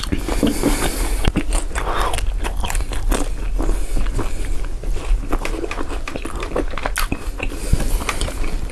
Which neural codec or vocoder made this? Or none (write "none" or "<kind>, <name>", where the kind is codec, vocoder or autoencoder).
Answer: none